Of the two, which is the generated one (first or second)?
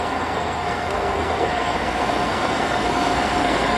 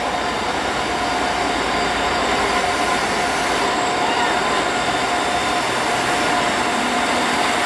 first